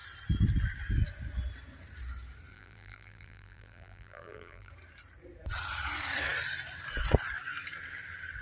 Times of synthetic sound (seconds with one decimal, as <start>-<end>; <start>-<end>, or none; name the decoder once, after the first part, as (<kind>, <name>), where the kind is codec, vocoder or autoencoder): 2.5-4.7 (vocoder, BigVGAN v2)